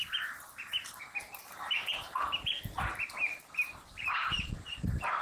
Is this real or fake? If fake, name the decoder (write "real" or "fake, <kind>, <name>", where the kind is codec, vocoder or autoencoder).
fake, vocoder, BigVGAN v2